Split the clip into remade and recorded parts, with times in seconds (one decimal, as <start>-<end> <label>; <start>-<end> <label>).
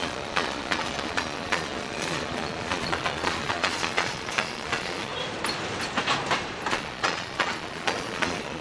0.0-5.1 remade; 5.1-6.7 recorded; 6.7-8.6 remade